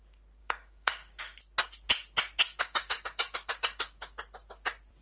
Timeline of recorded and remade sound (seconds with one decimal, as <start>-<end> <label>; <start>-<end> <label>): 0.0-0.4 recorded; 0.4-1.2 remade; 1.2-2.4 recorded; 2.4-4.2 remade; 4.2-5.0 recorded